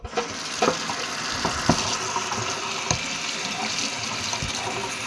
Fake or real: real